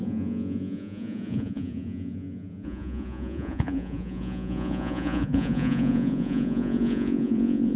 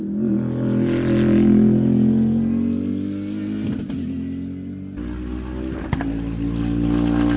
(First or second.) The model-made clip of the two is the first